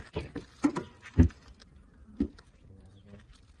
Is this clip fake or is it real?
real